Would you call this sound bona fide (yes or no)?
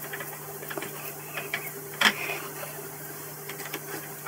no